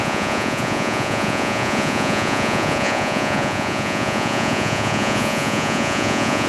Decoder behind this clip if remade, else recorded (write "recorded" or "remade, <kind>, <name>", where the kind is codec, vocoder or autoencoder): remade, vocoder, Vocos